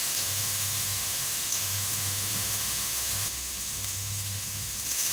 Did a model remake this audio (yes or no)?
yes